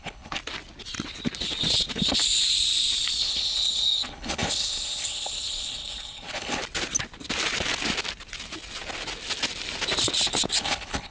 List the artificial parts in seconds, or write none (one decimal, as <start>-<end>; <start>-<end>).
0.0-0.4; 3.2-6.6; 10.6-11.1

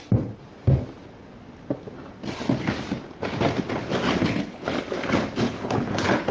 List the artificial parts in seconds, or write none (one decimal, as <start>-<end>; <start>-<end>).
4.2-4.8; 5.5-6.3